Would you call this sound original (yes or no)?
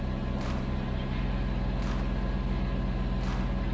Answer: yes